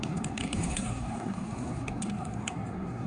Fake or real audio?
fake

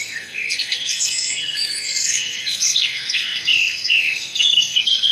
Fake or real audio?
fake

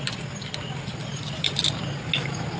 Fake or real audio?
real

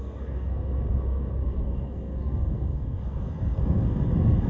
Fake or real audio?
fake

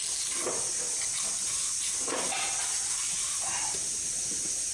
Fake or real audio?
real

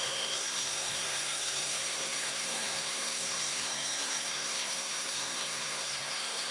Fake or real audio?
fake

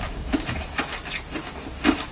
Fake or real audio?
real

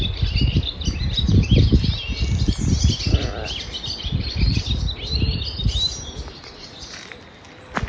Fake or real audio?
real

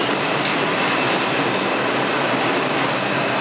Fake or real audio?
real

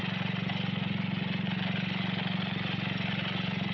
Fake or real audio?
real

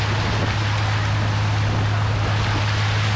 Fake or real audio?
real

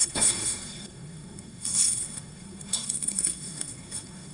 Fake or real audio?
fake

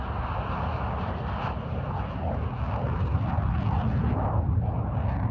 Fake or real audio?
real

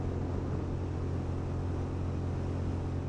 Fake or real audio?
real